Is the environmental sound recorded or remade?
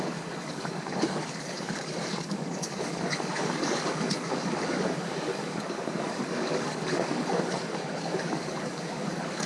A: remade